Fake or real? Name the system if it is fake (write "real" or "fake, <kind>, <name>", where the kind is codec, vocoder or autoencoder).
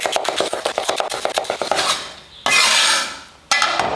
real